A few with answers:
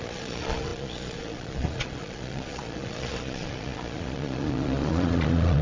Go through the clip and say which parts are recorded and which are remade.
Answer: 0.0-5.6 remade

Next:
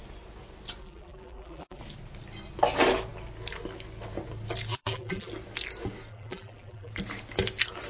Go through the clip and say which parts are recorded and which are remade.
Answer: 0.0-0.8 recorded; 0.8-1.8 remade; 1.8-4.7 recorded; 4.7-5.3 remade; 5.3-6.1 recorded; 6.1-6.9 remade; 6.9-7.9 recorded

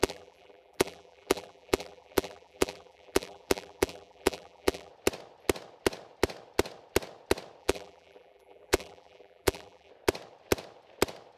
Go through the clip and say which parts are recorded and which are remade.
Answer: 0.0-4.9 remade; 4.9-7.6 recorded; 7.6-9.9 remade; 9.9-11.4 recorded

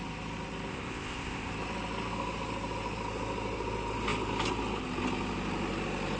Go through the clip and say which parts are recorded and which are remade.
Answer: 0.0-0.7 recorded; 0.7-1.5 remade; 1.5-6.2 recorded